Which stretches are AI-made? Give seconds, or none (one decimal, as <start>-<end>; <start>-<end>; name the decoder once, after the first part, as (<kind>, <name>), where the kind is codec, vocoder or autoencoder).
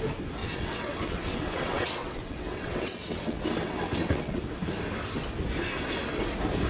0.4-4.4 (vocoder, WaveNeXt)